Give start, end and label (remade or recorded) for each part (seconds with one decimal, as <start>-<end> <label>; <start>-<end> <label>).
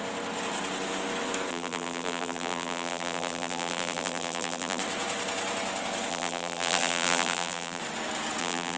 0.0-1.5 recorded; 1.5-4.8 remade; 4.8-6.1 recorded; 6.1-7.8 remade; 7.8-8.4 recorded; 8.4-8.8 remade